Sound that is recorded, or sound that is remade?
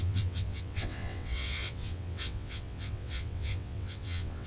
remade